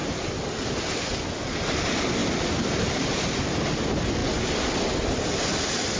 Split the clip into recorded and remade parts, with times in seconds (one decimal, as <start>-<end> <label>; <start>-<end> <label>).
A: 0.0-0.5 remade; 0.5-2.2 recorded; 2.2-2.9 remade; 2.9-4.2 recorded; 4.2-4.8 remade; 4.8-6.0 recorded